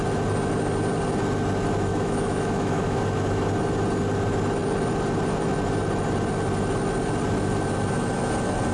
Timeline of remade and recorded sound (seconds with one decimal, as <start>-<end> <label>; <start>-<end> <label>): 0.0-1.9 recorded; 1.9-3.0 remade; 3.0-8.7 recorded